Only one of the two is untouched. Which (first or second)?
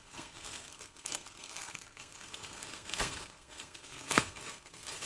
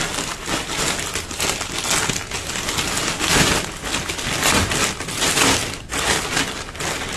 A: second